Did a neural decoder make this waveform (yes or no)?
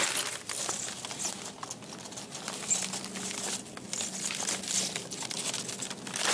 no